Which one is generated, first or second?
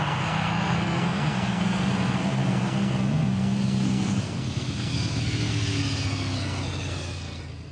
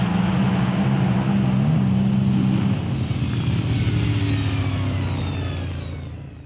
first